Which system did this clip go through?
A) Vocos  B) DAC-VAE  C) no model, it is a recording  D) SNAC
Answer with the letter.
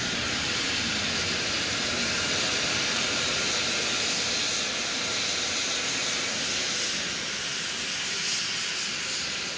C